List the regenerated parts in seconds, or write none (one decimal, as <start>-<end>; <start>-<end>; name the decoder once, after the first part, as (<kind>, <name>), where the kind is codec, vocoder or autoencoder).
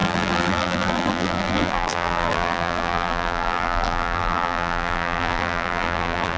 0.0-6.4 (vocoder, BigVGAN v2)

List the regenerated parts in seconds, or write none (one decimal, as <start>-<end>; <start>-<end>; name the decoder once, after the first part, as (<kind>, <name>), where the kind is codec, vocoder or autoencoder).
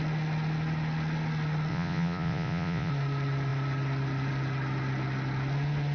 1.7-2.9 (vocoder, Vocos)